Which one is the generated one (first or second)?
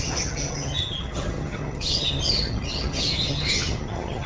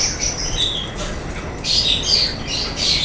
first